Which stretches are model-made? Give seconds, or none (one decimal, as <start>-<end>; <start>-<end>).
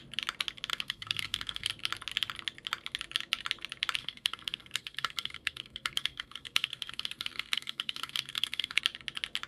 0.7-1.7; 4.0-8.8